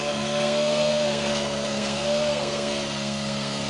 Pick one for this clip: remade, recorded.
remade